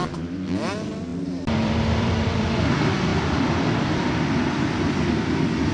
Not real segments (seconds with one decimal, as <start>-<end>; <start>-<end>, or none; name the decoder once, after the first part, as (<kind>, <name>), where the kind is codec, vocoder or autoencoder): 1.1-2.6 (vocoder, BigVGAN v2); 3.1-4.1